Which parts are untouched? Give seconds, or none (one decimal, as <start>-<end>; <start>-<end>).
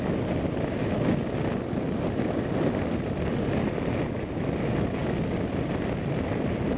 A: 0.0-6.8